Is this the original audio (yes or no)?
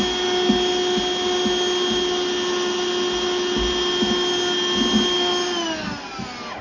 yes